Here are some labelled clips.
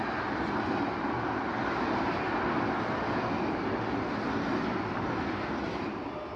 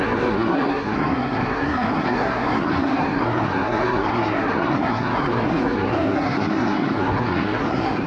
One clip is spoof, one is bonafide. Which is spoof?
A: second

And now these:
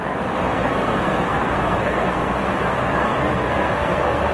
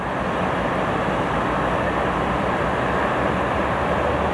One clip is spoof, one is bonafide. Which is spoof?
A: first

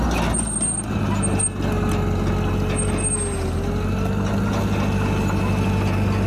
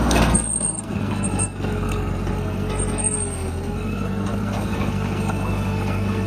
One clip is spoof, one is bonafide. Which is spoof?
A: second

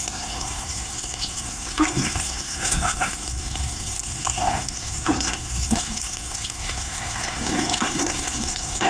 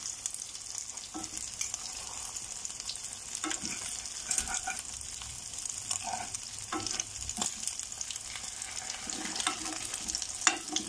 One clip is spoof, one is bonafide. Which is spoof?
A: first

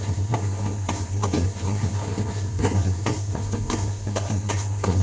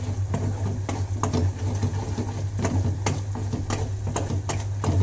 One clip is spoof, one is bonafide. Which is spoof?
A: first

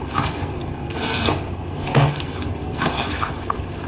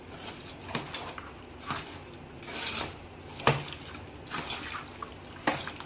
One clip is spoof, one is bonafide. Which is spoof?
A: first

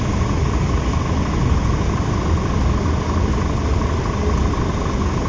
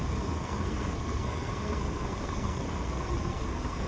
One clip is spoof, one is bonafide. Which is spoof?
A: second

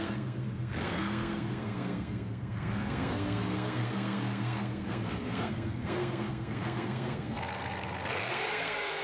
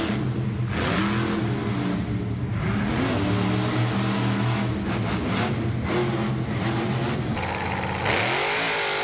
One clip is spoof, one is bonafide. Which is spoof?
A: first